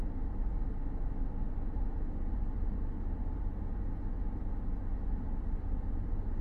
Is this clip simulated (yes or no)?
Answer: no